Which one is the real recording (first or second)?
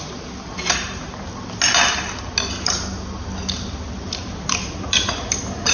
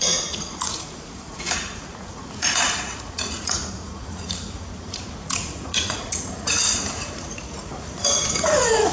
first